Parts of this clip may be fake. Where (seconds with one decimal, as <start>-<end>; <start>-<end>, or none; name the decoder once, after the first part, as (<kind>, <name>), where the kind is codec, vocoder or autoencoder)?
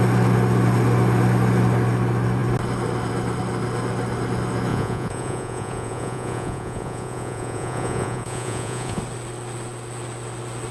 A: 4.7-9.0 (vocoder, Vocos)